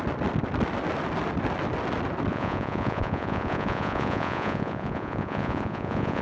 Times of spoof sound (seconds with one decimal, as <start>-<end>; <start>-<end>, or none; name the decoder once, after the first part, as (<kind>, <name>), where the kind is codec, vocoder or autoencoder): 2.3-6.2 (vocoder, Vocos)